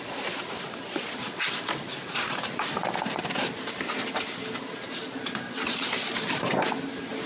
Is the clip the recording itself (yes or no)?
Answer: yes